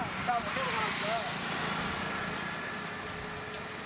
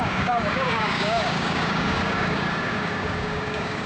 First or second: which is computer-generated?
second